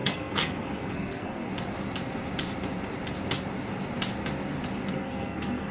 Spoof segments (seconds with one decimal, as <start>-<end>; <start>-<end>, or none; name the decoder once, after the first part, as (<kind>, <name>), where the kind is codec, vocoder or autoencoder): 0.0-1.5 (codec, SNAC); 4.9-5.7